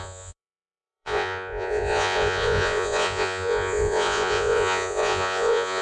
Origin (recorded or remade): remade